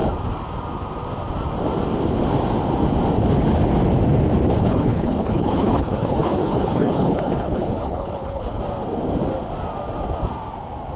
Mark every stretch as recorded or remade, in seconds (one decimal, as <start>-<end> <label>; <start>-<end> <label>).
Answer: 0.0-4.6 recorded; 4.6-8.6 remade; 8.6-11.0 recorded

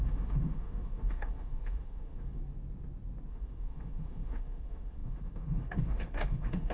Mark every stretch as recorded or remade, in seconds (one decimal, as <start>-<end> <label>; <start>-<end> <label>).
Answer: 0.0-2.4 remade; 2.4-3.3 recorded; 3.3-6.7 remade